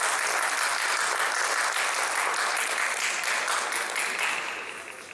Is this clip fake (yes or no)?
no